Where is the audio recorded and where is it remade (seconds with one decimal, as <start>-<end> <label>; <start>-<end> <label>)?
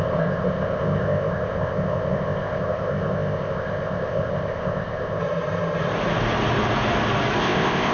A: 0.0-5.2 remade; 5.2-7.4 recorded; 7.4-7.9 remade